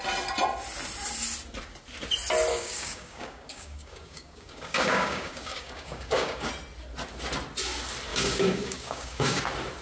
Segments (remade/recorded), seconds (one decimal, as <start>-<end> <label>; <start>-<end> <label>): 0.0-2.5 recorded; 2.5-6.5 remade; 6.5-8.1 recorded; 8.1-9.4 remade; 9.4-9.8 recorded